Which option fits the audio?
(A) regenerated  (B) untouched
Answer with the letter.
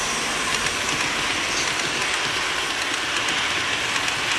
B